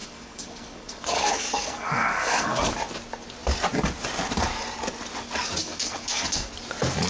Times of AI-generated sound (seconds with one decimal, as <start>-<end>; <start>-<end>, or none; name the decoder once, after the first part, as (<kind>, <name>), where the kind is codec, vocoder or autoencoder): 0.0-2.6 (codec, SNAC); 5.6-6.5